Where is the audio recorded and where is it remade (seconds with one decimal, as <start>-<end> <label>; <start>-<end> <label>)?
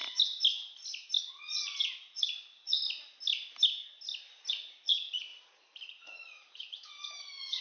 0.0-1.3 recorded; 1.3-2.8 remade; 2.8-4.5 recorded; 4.5-7.6 remade